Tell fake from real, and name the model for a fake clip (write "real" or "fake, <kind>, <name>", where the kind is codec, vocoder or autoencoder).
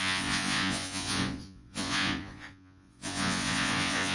fake, vocoder, Vocos